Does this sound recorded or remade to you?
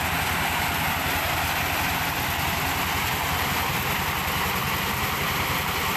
recorded